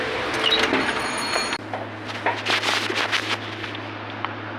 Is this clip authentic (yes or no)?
yes